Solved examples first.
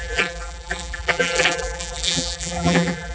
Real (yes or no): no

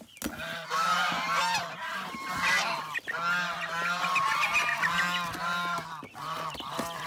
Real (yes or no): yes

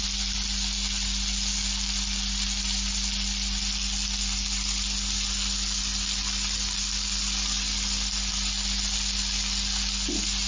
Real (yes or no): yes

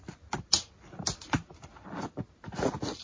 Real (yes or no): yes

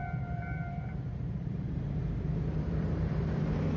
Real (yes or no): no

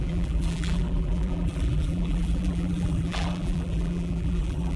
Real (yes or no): no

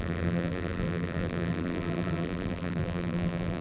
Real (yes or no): no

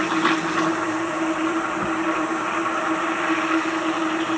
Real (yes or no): no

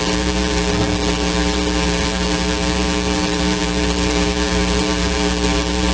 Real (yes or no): no